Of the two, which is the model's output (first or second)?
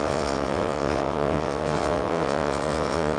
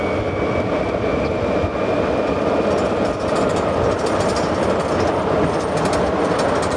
first